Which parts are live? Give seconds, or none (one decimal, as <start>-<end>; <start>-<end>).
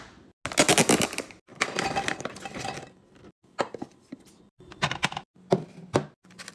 0.0-1.5; 5.3-6.5